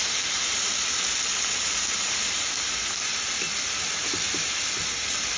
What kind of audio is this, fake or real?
real